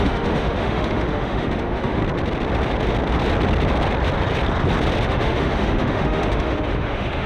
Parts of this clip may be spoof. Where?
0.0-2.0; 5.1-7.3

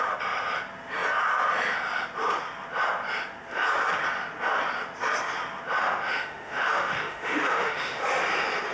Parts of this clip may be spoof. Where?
5.8-8.0

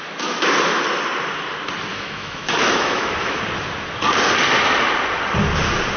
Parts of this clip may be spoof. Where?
1.9-3.4

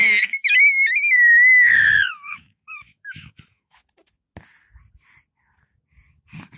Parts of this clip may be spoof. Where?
0.0-3.8

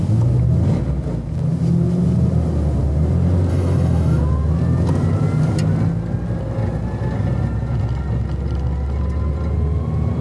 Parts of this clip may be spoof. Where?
3.5-4.2